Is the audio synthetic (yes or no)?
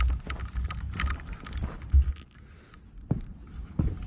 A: no